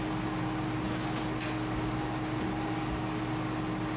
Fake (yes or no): no